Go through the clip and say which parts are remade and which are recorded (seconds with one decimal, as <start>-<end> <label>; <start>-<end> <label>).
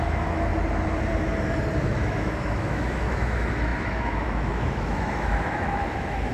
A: 0.0-0.5 remade; 0.5-1.8 recorded; 1.8-6.3 remade